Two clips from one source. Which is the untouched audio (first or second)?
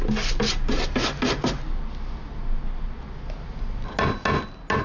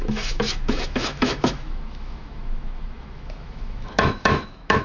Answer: first